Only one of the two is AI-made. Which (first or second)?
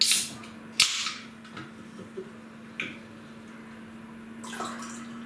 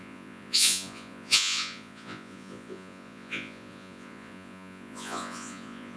second